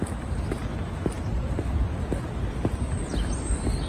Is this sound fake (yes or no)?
no